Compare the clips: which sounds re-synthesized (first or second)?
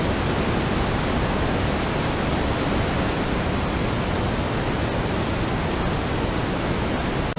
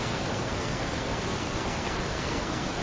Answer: second